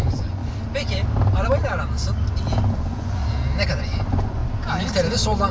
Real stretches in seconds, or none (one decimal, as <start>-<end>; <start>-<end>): 0.4-2.7; 3.2-3.8; 4.4-5.5